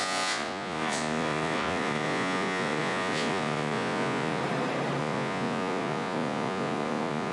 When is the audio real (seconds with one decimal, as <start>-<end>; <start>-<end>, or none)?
4.4-5.0